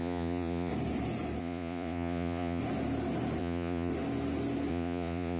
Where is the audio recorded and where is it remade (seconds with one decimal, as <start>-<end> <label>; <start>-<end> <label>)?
0.0-0.7 remade; 0.7-1.4 recorded; 1.4-2.6 remade; 2.6-3.4 recorded; 3.4-3.9 remade; 3.9-4.7 recorded; 4.7-5.4 remade